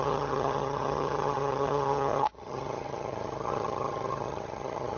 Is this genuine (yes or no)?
no